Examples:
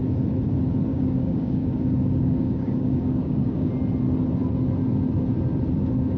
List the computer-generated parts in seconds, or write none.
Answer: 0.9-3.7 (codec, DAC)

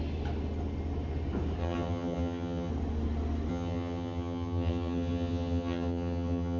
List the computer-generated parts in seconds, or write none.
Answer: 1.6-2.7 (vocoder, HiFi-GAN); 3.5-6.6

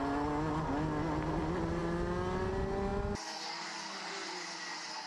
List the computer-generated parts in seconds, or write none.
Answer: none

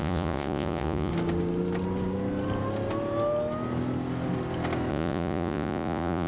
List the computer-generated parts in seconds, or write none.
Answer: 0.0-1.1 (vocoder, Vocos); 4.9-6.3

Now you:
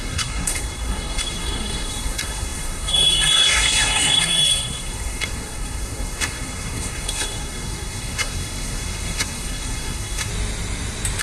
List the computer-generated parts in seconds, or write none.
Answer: 0.0-10.3 (codec, SNAC)

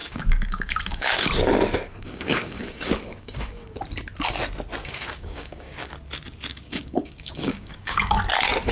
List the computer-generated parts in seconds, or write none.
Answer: 0.0-1.3 (codec, DAC); 1.9-3.8; 4.8-5.9; 6.5-8.2

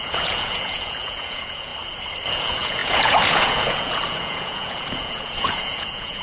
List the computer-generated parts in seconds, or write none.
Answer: 0.0-1.7 (vocoder, Vocos); 2.3-6.2